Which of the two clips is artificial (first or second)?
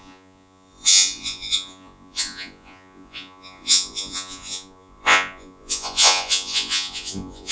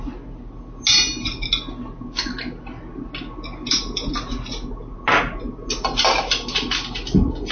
first